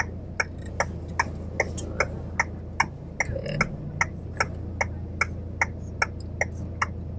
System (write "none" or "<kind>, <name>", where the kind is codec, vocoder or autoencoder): none